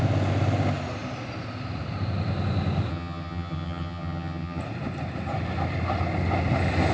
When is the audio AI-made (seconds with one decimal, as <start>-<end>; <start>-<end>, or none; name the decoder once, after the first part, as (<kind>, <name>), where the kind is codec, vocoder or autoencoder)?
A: 2.9-4.6 (vocoder, HiFi-GAN)